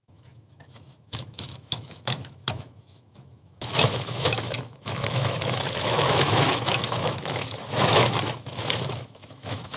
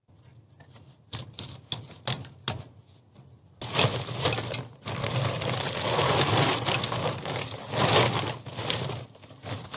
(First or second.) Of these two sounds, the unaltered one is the second